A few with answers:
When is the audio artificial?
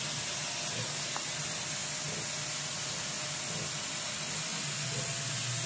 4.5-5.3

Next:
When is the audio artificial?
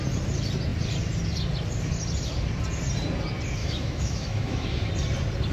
3.6-4.9